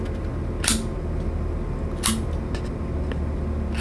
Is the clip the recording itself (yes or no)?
yes